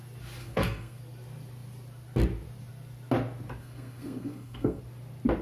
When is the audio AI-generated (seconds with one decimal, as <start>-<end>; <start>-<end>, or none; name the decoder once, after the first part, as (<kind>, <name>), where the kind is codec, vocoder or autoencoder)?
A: 0.4-1.0 (codec, SNAC); 3.6-4.8